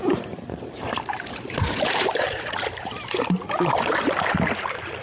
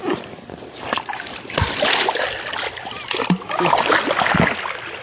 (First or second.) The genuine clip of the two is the second